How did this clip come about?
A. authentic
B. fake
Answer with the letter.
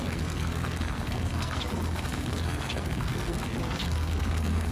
B